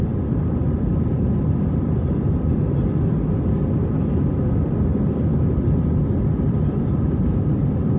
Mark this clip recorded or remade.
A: recorded